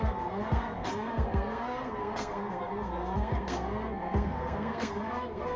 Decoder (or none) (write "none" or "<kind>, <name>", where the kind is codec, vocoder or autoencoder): codec, SNAC